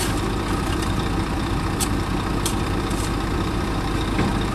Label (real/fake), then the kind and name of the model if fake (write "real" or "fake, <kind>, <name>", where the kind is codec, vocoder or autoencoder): fake, vocoder, BigVGAN v2